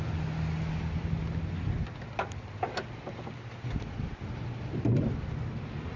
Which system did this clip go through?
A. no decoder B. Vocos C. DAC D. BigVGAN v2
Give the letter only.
D